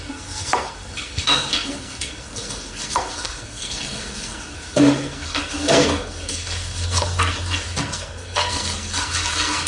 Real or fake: fake